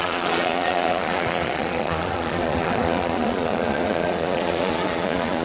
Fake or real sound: fake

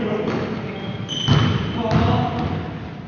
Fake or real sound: real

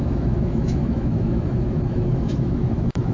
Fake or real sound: fake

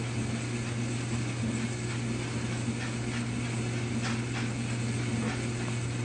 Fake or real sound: real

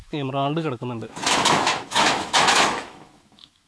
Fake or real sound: fake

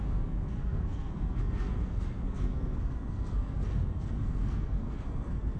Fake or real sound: fake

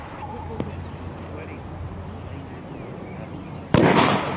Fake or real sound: real